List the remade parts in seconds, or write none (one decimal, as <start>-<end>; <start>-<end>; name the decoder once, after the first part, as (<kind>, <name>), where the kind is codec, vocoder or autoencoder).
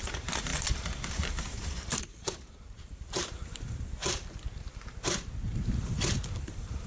0.0-4.0 (vocoder, BigVGAN v2); 6.4-6.9